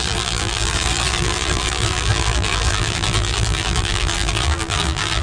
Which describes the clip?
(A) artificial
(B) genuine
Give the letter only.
A